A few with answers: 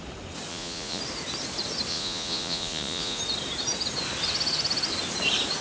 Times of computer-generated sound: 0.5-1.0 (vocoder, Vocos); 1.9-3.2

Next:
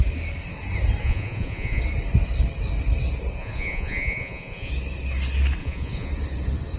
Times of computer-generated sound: 1.0-1.8 (vocoder, Vocos); 3.4-4.7; 5.6-6.1

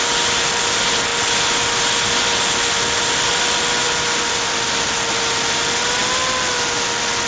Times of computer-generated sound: none